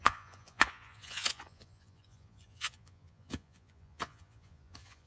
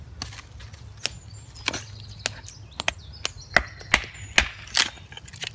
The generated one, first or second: first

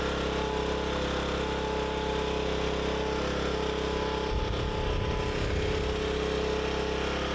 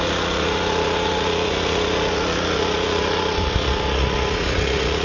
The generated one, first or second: second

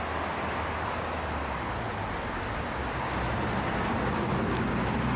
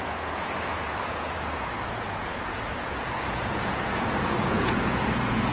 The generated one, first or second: second